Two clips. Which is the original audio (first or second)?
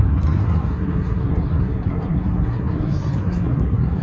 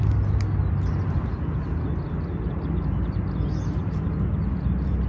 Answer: second